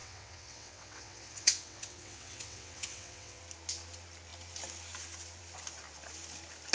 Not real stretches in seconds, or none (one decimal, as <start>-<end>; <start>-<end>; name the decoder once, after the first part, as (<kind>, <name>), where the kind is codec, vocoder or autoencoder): 0.0-3.4 (vocoder, WaveNeXt)